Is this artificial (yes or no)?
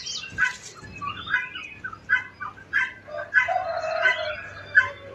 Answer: no